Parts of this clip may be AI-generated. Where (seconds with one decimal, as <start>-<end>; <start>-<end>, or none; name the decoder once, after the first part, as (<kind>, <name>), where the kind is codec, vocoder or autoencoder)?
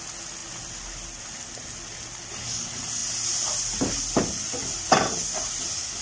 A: none